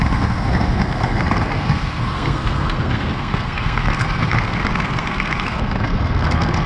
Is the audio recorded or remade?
remade